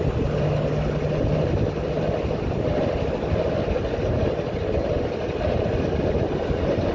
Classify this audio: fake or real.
real